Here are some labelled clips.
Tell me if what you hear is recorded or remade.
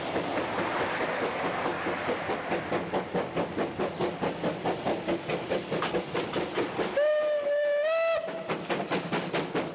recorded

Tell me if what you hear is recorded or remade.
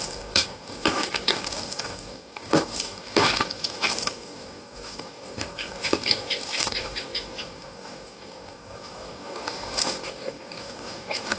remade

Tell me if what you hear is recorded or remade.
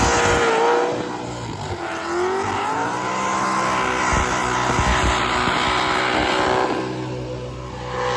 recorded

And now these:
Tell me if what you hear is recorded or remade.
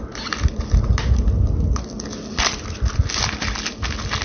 recorded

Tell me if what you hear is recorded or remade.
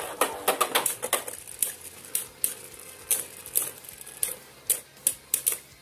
recorded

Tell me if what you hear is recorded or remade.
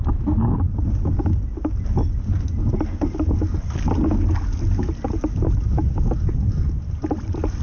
recorded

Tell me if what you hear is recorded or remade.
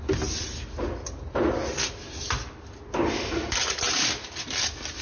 recorded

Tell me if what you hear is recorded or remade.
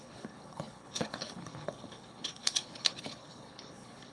remade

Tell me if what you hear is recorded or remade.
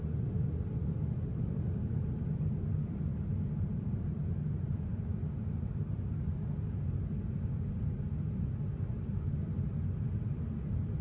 recorded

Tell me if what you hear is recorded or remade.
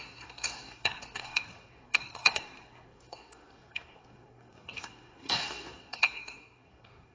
remade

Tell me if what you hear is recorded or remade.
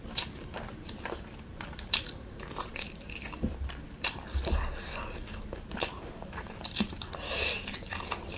remade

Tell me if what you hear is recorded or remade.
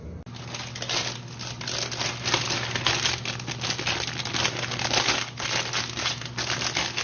recorded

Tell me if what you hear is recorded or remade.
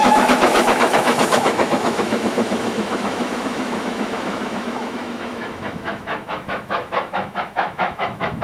remade